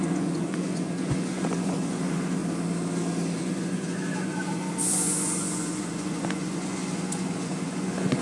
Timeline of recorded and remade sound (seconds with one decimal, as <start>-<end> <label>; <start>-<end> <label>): 0.0-2.4 remade; 2.4-3.4 recorded; 3.4-8.2 remade